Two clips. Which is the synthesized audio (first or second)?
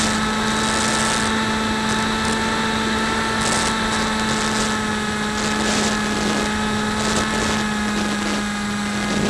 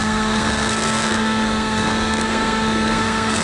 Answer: second